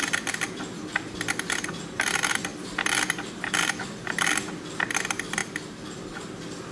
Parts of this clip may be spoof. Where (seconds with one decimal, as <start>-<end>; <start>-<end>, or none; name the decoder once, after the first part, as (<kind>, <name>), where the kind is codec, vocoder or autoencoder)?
none